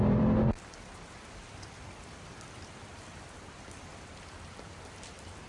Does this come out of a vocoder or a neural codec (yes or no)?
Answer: yes